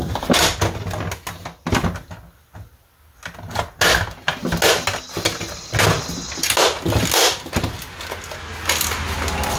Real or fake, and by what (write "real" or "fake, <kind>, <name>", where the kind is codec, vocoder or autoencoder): real